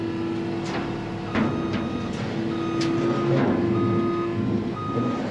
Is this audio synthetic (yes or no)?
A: no